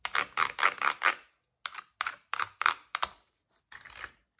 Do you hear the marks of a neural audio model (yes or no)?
no